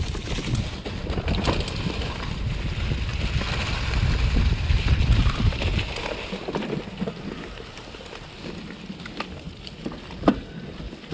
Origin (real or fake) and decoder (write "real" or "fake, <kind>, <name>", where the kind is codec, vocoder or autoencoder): real